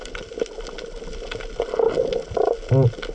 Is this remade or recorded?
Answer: recorded